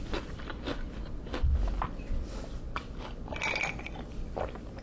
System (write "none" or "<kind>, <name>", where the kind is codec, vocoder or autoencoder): none